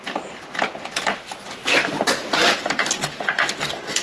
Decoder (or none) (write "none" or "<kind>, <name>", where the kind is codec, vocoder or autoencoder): none